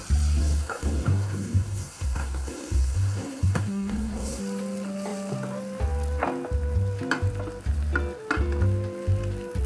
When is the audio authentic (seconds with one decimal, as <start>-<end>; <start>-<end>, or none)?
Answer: 0.0-0.4; 4.4-9.7